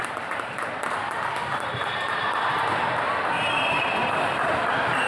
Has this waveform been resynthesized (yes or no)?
yes